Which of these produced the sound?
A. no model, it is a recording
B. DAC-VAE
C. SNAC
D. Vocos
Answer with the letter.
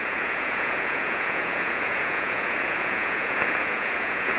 D